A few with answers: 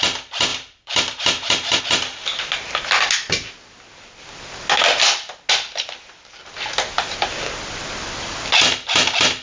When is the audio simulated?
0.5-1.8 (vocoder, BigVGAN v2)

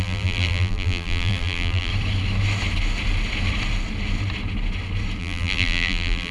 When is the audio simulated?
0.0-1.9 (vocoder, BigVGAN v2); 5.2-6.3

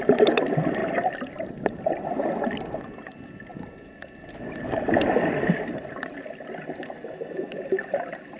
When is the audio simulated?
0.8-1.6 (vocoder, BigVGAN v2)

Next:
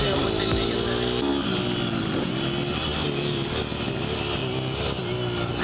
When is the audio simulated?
none